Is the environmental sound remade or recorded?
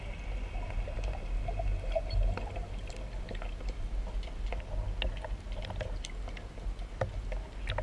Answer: recorded